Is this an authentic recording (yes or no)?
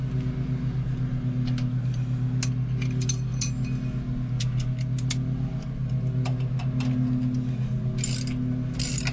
yes